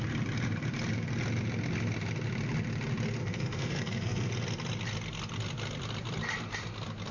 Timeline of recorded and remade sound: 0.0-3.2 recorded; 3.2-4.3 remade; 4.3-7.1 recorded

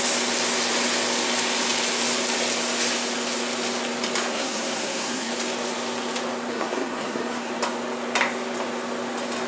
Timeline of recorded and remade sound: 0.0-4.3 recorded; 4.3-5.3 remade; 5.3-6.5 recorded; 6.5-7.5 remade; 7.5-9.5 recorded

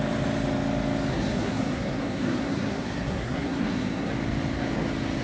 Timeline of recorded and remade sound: 0.0-1.1 recorded; 1.1-4.1 remade; 4.1-5.2 recorded